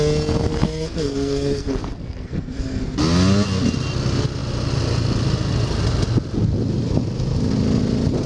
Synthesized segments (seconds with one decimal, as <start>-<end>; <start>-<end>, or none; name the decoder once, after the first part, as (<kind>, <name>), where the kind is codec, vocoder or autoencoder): 0.5-3.0 (codec, SNAC)

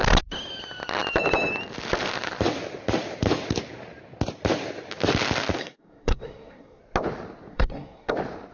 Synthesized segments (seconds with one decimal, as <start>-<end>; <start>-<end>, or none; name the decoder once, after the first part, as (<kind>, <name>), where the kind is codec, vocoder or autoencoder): 5.6-6.8 (codec, SNAC); 7.5-8.1